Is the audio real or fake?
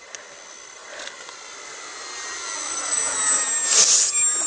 real